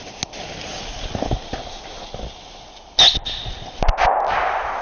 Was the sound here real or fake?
real